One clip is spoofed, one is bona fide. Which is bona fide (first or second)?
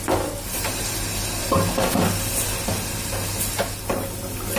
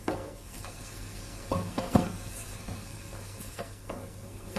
first